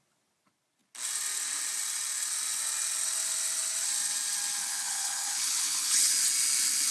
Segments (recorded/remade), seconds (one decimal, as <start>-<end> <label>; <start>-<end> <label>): 0.0-4.6 recorded; 4.6-6.1 remade; 6.1-6.9 recorded